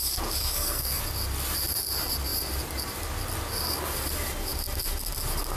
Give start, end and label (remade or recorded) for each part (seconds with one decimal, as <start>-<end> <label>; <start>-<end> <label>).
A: 0.0-0.4 recorded; 0.4-1.0 remade; 1.0-5.6 recorded